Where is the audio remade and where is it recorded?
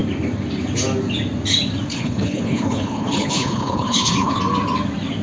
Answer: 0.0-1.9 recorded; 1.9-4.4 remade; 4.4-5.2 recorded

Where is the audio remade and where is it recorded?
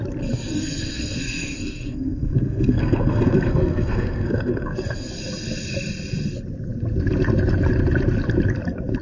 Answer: 0.0-0.5 recorded; 0.5-5.1 remade; 5.1-9.0 recorded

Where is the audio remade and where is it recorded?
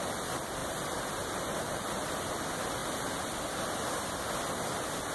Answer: 0.0-5.1 remade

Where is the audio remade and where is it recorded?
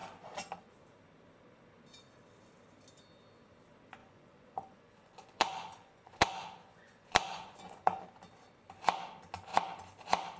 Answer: 0.0-4.0 recorded; 4.0-8.0 remade; 8.0-10.4 recorded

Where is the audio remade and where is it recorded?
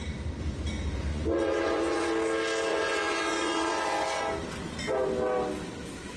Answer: 0.0-1.1 recorded; 1.1-2.1 remade; 2.1-2.7 recorded; 2.7-4.2 remade; 4.2-6.2 recorded